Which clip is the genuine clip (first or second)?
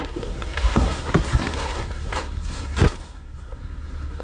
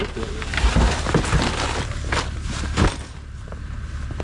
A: second